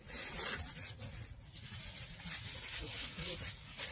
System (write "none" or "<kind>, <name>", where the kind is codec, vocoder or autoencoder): vocoder, Vocos